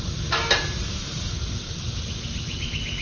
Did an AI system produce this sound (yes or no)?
no